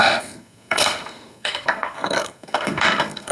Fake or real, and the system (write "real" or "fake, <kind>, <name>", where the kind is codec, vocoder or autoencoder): fake, codec, SNAC